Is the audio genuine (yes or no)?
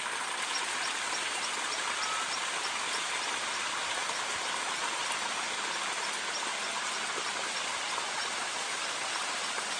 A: yes